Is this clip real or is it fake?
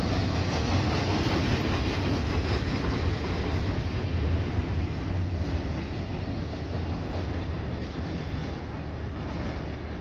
real